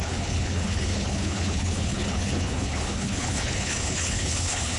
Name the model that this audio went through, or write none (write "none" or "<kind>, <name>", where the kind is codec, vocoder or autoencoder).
codec, HILCodec